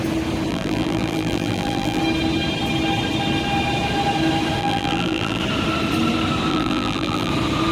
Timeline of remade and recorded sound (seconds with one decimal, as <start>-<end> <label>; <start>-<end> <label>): 0.0-0.5 recorded; 0.5-2.0 remade; 2.0-4.6 recorded; 4.6-5.4 remade; 5.4-6.5 recorded; 6.5-7.3 remade; 7.3-7.7 recorded